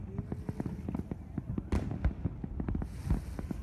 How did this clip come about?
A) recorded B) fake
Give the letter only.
A